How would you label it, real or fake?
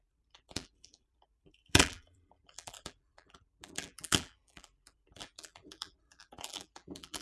fake